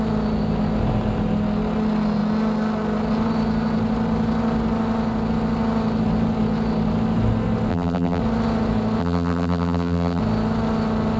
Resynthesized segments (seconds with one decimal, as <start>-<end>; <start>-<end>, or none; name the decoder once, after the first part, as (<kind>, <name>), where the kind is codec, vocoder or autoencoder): 7.7-8.2 (vocoder, BigVGAN v2); 9.0-10.2

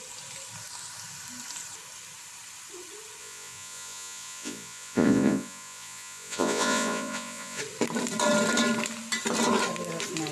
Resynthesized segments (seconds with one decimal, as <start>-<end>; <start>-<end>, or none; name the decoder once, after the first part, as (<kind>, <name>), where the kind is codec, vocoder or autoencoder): 3.2-7.6 (vocoder, Vocos)